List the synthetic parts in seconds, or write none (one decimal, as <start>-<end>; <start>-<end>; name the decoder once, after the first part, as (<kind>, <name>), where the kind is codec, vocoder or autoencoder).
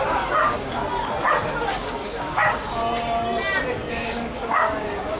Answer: 0.0-0.8 (codec, DAC); 1.7-2.8; 3.9-5.2